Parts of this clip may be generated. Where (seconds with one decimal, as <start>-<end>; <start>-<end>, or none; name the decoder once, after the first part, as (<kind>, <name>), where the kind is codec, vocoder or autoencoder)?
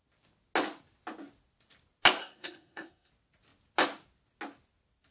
2.2-3.1 (codec, SNAC)